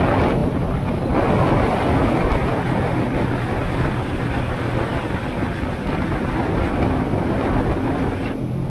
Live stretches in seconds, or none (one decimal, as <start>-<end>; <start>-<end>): 0.0-8.7